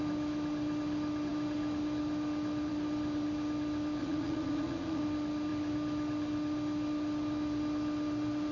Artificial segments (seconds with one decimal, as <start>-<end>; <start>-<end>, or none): 4.0-5.0